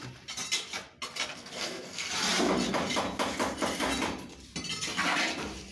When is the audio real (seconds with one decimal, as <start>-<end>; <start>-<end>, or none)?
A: 0.0-1.3; 2.1-5.7